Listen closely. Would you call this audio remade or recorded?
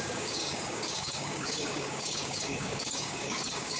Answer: remade